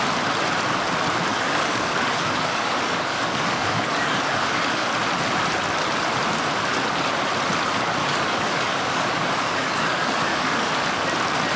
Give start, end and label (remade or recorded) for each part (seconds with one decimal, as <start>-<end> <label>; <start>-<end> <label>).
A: 0.0-1.3 recorded; 1.3-4.9 remade; 4.9-8.0 recorded; 8.0-10.7 remade; 10.7-11.6 recorded